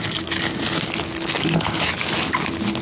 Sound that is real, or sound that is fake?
real